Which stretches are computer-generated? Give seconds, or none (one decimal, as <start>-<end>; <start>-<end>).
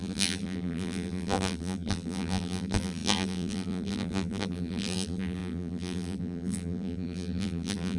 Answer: 0.0-8.0